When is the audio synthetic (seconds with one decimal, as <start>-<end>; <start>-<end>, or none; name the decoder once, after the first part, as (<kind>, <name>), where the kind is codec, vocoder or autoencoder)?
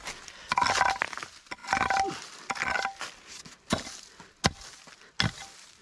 none